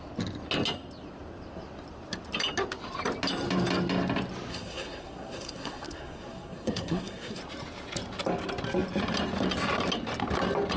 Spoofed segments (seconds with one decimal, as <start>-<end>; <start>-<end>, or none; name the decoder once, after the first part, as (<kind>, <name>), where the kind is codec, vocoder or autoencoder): 4.5-7.4 (codec, SNAC)